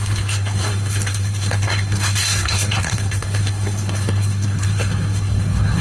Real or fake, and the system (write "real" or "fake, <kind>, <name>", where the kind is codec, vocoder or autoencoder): fake, codec, SNAC